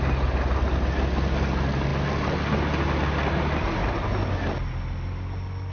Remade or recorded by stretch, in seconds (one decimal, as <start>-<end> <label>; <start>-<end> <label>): 0.0-5.7 recorded